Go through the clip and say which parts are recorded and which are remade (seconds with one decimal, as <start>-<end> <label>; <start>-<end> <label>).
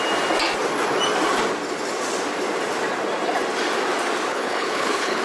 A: 0.0-4.3 recorded; 4.3-5.2 remade